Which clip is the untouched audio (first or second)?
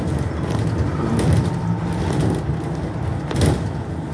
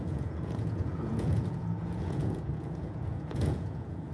first